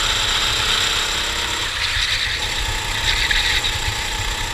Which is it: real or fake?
real